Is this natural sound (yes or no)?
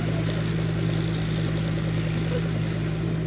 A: yes